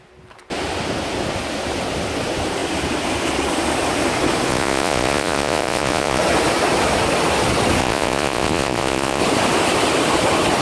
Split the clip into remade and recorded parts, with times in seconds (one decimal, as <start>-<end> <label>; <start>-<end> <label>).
0.0-4.5 recorded; 4.5-6.2 remade; 6.2-7.8 recorded; 7.8-9.2 remade; 9.2-10.6 recorded